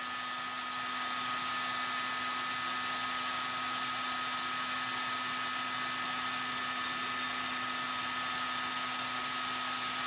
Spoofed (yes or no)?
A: no